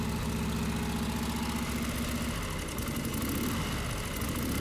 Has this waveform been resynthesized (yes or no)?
no